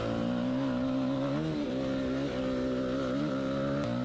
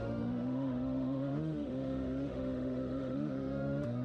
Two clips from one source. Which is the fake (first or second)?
second